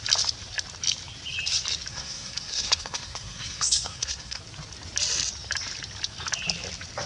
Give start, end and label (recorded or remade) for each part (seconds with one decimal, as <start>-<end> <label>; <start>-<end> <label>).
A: 0.0-1.9 recorded; 1.9-4.4 remade; 4.4-7.1 recorded